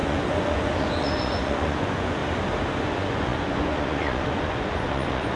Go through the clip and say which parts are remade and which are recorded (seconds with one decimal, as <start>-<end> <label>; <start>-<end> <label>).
0.0-2.2 remade; 2.2-2.8 recorded; 2.8-5.4 remade